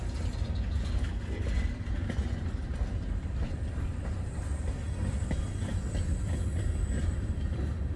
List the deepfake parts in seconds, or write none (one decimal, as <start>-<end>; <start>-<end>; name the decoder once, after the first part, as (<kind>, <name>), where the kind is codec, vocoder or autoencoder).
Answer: none